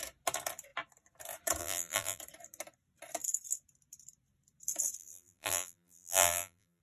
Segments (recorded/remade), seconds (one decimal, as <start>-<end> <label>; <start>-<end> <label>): 0.0-1.6 recorded; 1.6-2.2 remade; 2.2-5.0 recorded; 5.0-6.8 remade